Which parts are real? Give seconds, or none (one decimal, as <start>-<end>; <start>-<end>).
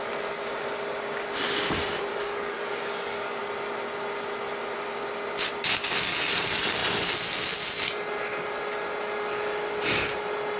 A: 0.0-2.1; 3.4-10.6